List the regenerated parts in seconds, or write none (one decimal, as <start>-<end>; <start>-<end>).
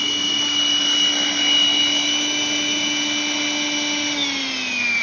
none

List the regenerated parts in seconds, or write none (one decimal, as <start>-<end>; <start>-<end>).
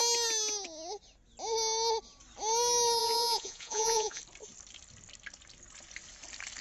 3.0-4.2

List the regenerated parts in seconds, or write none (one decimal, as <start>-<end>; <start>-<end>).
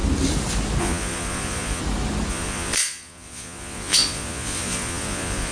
0.8-1.8; 2.3-5.5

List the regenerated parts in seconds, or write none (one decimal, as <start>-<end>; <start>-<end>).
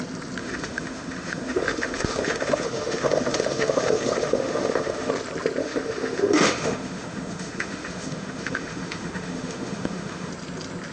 0.4-5.1; 5.6-10.3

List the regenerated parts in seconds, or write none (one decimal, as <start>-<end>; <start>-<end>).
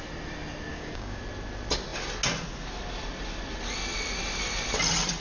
0.7-1.2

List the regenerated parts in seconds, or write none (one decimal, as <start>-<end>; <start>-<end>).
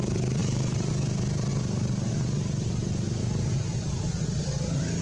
0.4-0.9; 1.5-2.1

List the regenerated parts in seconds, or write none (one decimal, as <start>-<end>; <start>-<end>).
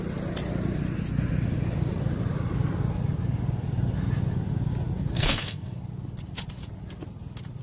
5.1-5.8